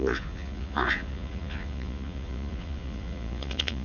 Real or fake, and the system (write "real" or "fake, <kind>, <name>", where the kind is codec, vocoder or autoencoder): fake, vocoder, Vocos